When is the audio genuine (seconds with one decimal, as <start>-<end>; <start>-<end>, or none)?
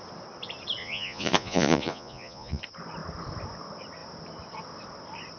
0.0-0.8; 2.6-5.4